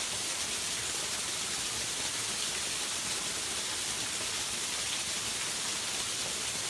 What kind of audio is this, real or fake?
real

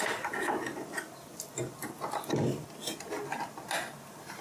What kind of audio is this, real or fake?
real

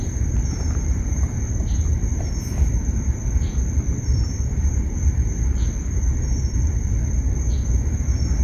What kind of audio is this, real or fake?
fake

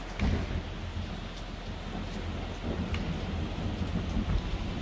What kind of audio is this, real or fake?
real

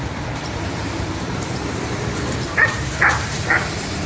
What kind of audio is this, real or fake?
fake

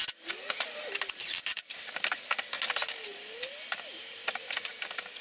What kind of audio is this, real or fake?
real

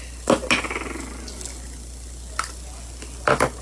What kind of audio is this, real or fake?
real